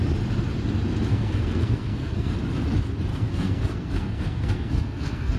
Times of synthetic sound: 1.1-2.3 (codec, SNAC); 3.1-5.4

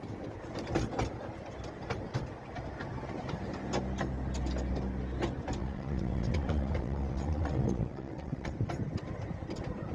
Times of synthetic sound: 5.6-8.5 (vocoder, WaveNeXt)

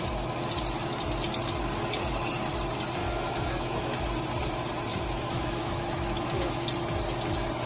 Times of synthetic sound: 3.0-4.0 (autoencoder, DAC-VAE); 4.9-6.7

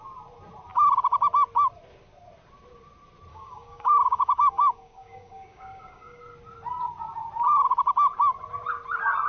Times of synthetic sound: 3.3-6.2 (codec, DAC)

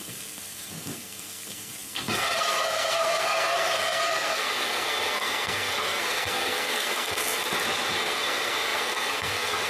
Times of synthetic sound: 0.0-7.4 (codec, SNAC); 7.9-9.7

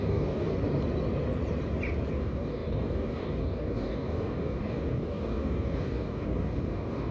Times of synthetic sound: 0.0-0.5 (codec, DAC); 2.1-7.1